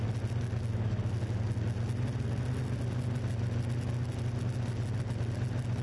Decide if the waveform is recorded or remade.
recorded